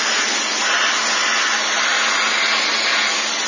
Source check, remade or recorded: recorded